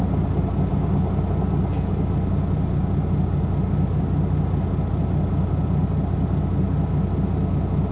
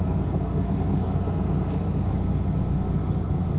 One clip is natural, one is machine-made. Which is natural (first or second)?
first